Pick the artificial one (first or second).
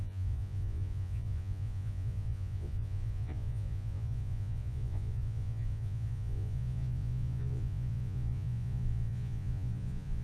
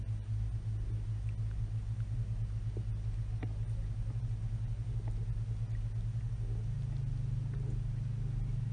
first